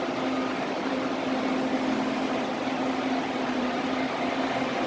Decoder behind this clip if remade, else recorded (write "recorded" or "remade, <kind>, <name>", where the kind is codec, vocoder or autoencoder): recorded